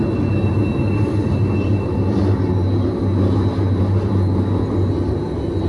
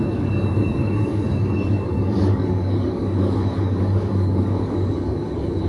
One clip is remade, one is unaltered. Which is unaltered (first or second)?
first